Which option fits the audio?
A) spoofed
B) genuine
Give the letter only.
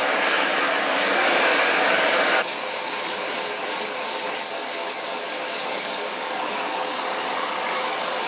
A